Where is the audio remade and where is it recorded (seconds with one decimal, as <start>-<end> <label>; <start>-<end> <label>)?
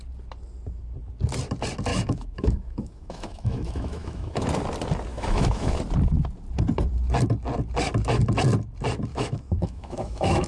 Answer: 0.0-1.9 recorded; 1.9-4.4 remade; 4.4-5.1 recorded; 5.1-5.8 remade; 5.8-9.1 recorded; 9.1-10.5 remade